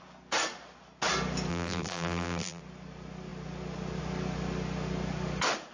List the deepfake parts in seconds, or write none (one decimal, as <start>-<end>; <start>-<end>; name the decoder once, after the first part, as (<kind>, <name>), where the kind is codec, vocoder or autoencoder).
1.5-2.6 (vocoder, BigVGAN v2)